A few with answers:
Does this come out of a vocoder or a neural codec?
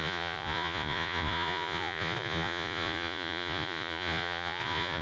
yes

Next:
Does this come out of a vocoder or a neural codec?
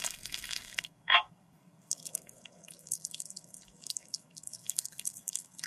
yes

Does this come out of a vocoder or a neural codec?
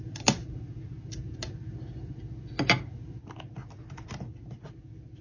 no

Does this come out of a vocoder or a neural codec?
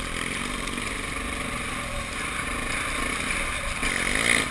no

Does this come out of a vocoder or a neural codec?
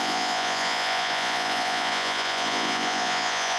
yes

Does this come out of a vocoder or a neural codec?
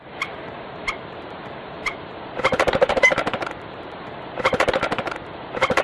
yes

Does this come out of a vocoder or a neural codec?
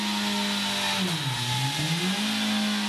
no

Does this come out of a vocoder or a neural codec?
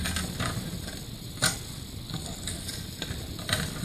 no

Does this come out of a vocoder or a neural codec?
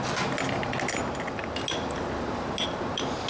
no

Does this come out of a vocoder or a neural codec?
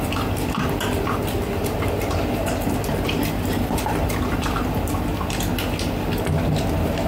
yes